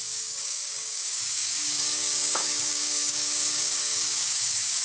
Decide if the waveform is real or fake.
fake